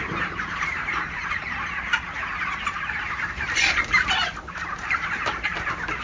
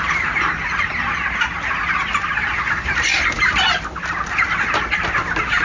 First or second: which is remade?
first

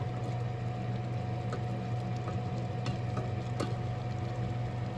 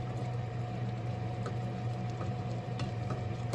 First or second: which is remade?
second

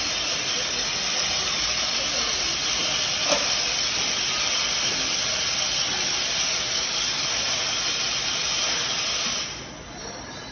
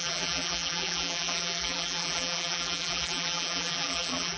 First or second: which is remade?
second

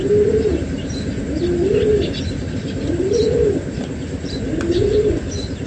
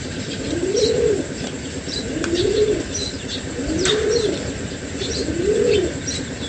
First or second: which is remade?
second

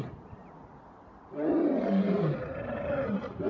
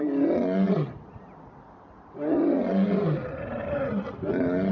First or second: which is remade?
first